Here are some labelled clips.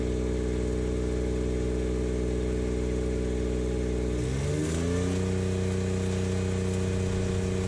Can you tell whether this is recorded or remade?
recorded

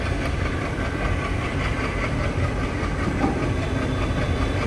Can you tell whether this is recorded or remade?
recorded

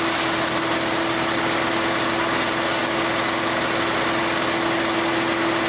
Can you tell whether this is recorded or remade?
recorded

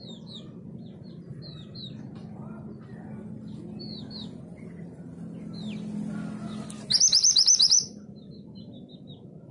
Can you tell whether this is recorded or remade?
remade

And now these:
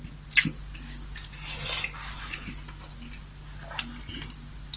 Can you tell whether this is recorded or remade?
recorded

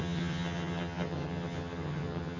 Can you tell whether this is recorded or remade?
remade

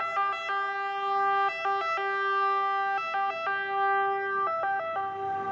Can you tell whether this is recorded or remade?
recorded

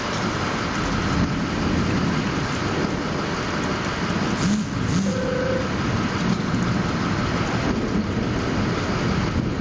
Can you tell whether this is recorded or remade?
recorded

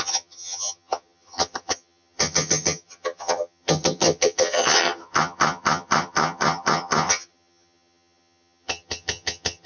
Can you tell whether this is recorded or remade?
remade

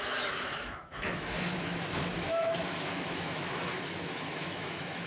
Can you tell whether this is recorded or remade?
remade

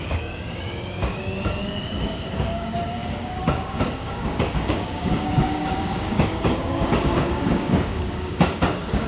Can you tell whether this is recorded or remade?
remade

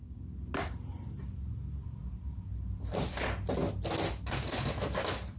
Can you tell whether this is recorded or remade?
recorded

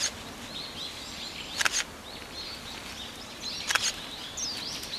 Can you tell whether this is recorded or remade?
recorded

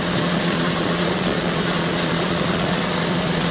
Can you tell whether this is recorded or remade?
remade